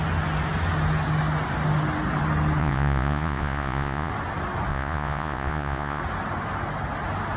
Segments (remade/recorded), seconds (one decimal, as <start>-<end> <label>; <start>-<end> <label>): 0.0-2.6 recorded; 2.6-4.1 remade; 4.1-4.7 recorded; 4.7-6.0 remade; 6.0-7.4 recorded